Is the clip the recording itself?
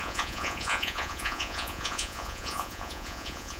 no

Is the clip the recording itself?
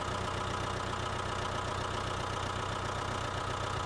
yes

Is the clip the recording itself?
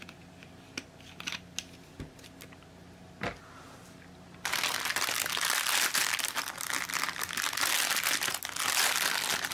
yes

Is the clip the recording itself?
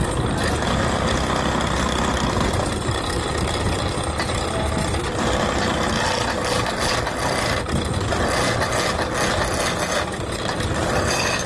yes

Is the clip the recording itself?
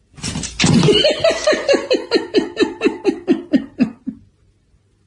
yes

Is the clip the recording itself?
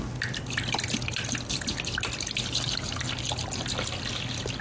yes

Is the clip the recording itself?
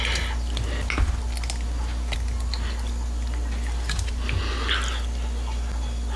yes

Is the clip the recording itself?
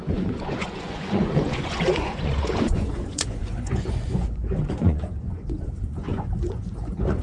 no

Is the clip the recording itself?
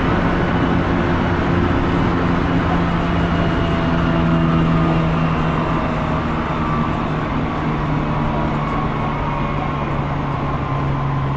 yes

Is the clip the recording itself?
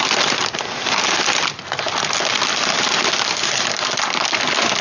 yes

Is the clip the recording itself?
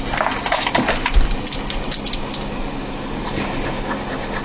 yes